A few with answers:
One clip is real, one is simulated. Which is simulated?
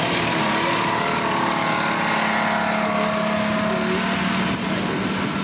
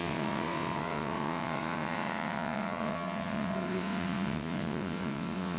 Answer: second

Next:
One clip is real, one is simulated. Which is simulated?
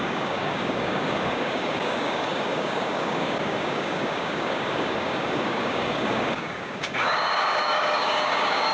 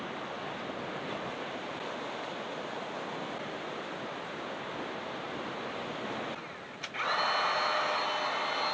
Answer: first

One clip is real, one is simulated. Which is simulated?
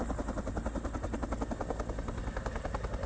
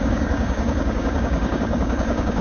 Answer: second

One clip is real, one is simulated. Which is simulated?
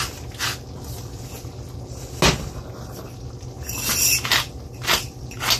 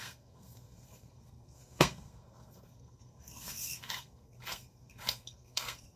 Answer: second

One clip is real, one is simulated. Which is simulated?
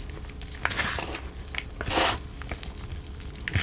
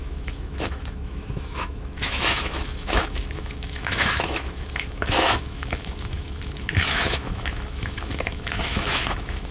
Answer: second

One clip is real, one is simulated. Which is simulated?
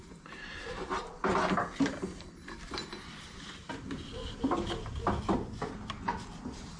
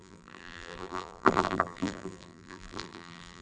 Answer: second